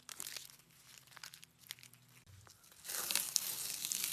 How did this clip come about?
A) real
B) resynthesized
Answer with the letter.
A